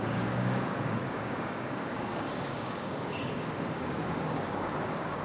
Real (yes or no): no